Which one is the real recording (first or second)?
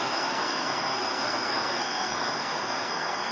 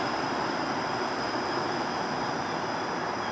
second